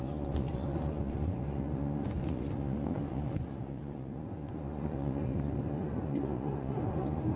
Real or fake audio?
fake